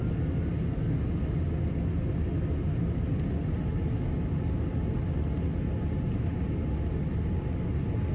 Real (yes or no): yes